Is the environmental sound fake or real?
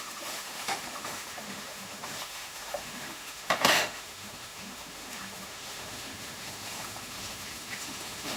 fake